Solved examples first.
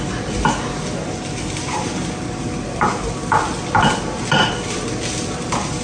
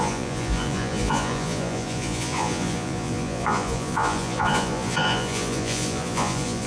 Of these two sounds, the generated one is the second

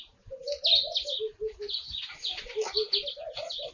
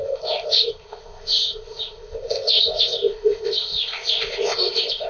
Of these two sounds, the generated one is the second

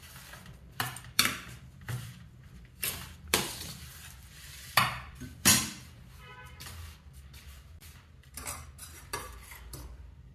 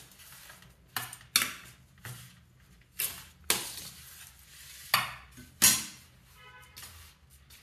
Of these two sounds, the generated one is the first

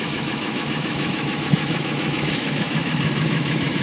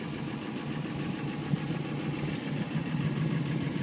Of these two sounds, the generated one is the first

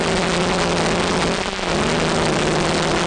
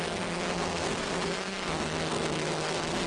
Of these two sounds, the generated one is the second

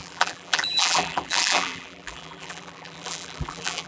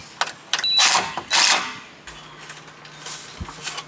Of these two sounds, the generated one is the first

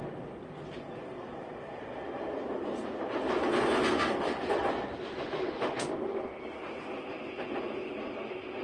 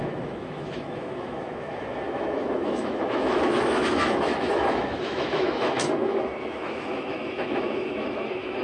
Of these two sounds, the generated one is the second